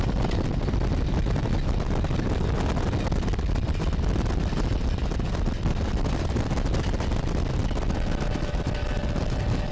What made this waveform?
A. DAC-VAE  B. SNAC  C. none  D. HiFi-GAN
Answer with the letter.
C